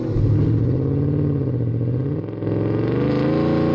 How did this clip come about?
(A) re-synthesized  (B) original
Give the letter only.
B